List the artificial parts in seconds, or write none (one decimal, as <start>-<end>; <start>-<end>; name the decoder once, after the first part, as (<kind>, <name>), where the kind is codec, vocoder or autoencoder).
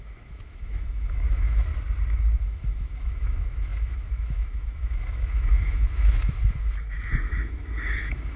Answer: 0.0-1.7 (autoencoder, DAC-VAE); 2.4-8.4